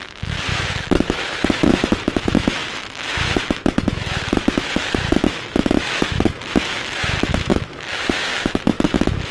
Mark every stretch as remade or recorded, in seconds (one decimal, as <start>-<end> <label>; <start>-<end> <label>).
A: 0.0-9.3 remade